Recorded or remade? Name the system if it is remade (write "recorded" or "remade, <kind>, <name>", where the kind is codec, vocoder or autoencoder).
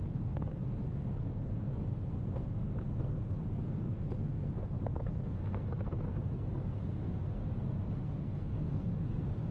remade, codec, SNAC